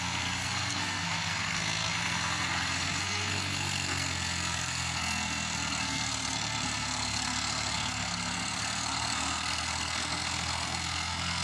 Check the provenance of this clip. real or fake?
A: fake